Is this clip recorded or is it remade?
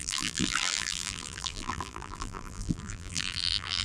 remade